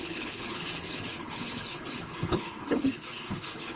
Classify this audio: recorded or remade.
remade